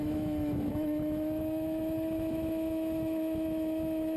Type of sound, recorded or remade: remade